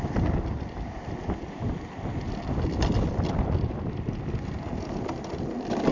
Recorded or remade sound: recorded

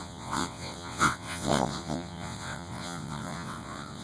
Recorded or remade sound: remade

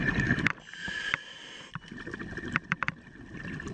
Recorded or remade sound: recorded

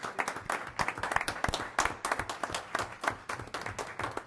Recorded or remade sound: recorded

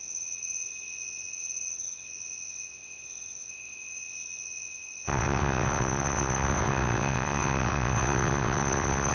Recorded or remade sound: remade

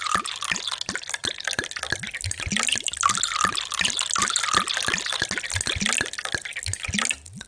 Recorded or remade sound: recorded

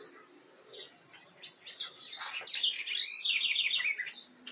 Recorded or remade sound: recorded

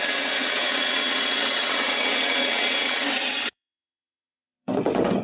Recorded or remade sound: remade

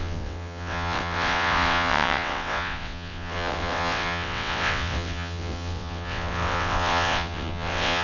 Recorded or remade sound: remade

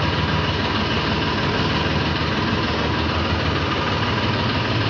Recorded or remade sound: recorded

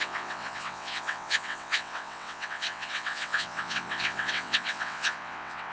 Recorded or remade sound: remade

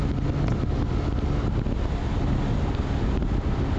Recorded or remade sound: recorded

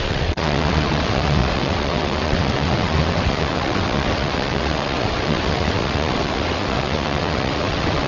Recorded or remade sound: remade